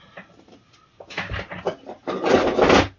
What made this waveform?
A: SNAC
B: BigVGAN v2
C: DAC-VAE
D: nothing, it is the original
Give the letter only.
D